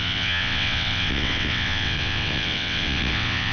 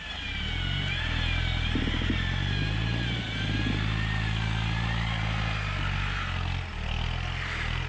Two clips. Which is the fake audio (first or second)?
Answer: first